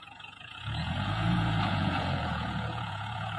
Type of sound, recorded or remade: remade